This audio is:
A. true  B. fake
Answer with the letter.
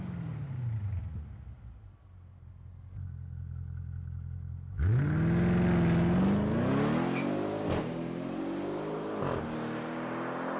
A